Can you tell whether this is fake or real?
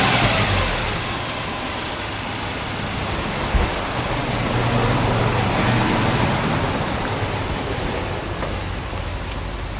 real